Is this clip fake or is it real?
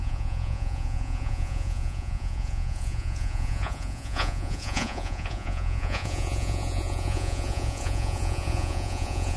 fake